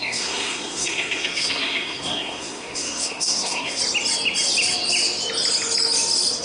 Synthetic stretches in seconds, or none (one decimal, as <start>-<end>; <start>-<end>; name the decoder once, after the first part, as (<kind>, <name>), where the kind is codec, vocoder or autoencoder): 0.0-3.8 (codec, SNAC)